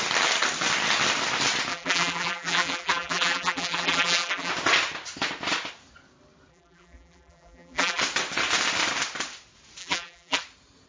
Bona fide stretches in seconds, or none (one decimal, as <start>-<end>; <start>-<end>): 0.0-1.7; 4.5-6.5; 8.0-9.8; 10.4-10.9

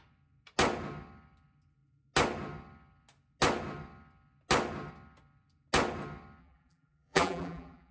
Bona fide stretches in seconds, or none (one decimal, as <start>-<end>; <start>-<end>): 0.0-6.4

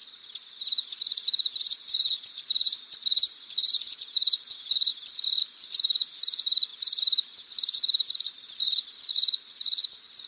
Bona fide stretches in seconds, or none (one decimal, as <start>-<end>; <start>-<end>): 4.5-6.7; 9.1-10.3

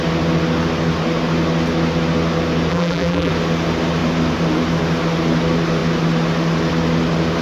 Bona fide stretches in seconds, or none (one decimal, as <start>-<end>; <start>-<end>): 0.0-2.7; 3.3-7.4

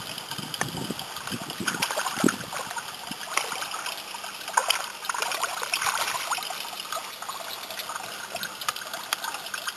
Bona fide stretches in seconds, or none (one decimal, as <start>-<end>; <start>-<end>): 0.0-4.6; 5.7-9.8